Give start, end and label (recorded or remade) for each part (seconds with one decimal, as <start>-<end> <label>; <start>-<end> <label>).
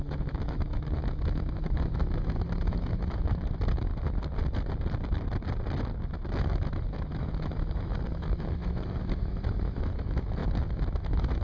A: 0.0-3.9 remade; 3.9-6.4 recorded; 6.4-11.4 remade